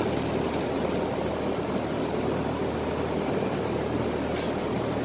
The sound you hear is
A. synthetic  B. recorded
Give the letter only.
B